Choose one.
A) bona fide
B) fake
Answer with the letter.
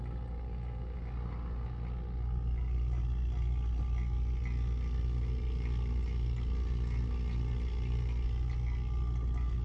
A